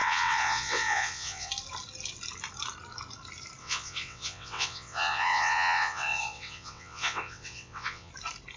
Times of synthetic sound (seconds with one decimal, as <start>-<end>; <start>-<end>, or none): 0.0-1.5; 3.6-8.1